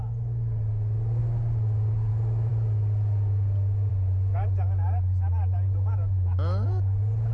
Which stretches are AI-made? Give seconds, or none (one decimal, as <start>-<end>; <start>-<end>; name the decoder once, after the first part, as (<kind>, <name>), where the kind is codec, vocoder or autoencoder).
none